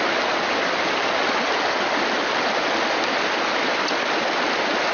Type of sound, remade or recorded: recorded